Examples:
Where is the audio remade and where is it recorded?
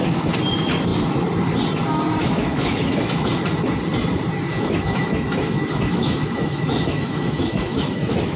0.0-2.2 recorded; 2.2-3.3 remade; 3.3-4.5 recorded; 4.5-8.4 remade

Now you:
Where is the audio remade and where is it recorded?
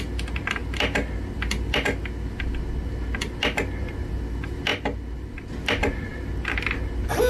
0.0-7.3 recorded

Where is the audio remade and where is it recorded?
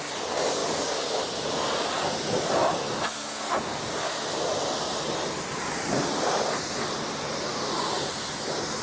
0.0-8.8 recorded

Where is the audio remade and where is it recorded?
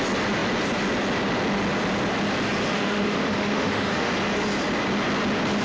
0.0-2.7 recorded; 2.7-4.1 remade; 4.1-5.6 recorded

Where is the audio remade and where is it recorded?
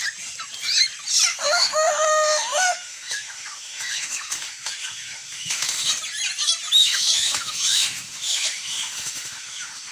0.0-1.3 recorded; 1.3-5.9 remade; 5.9-6.8 recorded; 6.8-9.9 remade